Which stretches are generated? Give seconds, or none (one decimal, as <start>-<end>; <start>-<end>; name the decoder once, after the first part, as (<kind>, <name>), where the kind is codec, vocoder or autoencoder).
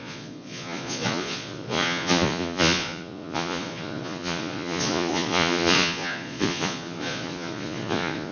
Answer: 0.0-8.3 (vocoder, Vocos)